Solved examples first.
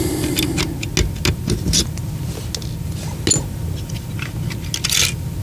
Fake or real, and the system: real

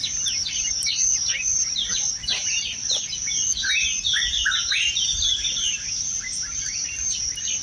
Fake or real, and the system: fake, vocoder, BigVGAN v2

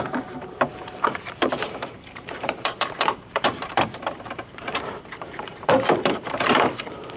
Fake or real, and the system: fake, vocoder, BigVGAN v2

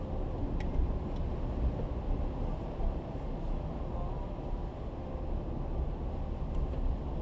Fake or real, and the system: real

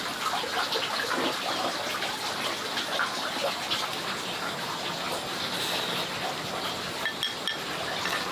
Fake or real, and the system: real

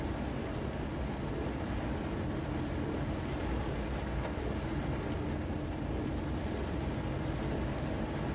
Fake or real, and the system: real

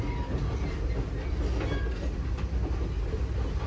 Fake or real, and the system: real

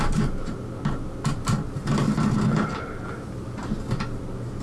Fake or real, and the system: real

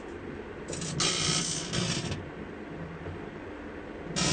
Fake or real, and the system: real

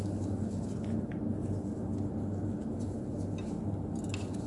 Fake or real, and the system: real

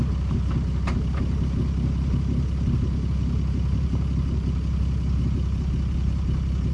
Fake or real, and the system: real